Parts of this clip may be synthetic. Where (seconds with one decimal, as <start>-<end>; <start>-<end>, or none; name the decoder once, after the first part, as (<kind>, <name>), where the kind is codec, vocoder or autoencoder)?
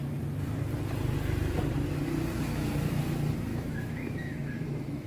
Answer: 3.5-5.1 (autoencoder, DAC-VAE)